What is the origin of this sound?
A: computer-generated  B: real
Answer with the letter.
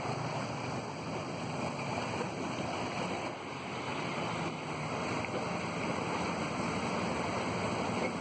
B